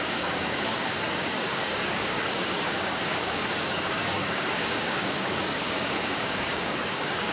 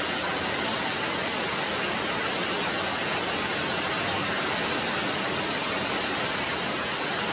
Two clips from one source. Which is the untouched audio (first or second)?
second